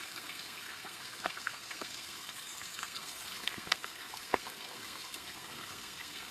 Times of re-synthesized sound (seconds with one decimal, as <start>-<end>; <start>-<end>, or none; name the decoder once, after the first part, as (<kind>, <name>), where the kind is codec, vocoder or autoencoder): 0.0-6.3 (codec, SNAC)